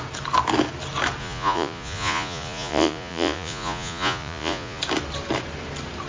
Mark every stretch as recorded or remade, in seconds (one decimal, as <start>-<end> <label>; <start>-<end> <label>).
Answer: 0.0-1.2 recorded; 1.2-4.8 remade; 4.8-6.1 recorded